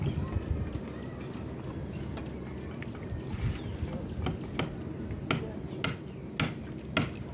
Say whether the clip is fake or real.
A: real